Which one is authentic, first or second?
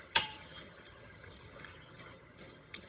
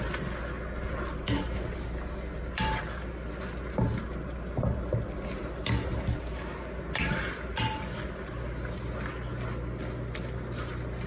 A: second